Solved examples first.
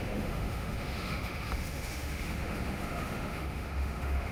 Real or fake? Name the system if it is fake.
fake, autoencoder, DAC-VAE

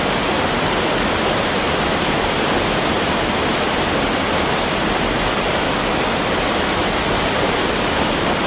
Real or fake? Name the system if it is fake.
real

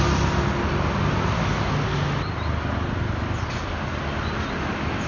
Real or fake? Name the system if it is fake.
real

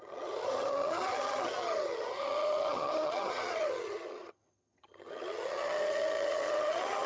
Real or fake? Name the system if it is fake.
fake, vocoder, HiFi-GAN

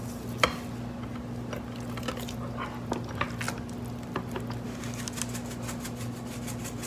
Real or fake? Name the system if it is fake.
real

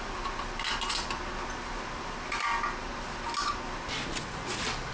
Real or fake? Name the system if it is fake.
real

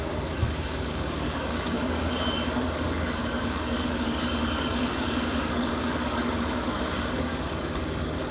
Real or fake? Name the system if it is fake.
fake, codec, DAC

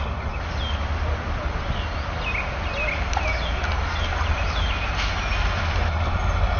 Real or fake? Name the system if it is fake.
real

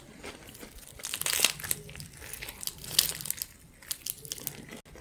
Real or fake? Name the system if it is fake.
real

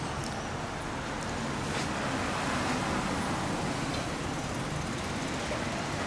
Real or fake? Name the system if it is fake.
real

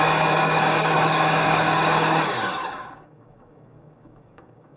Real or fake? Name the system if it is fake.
fake, codec, DAC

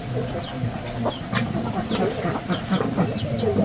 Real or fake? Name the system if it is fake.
real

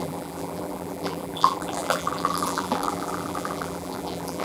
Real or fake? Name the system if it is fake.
fake, vocoder, BigVGAN v2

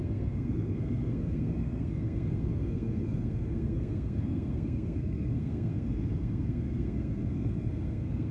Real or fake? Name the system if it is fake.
fake, codec, SNAC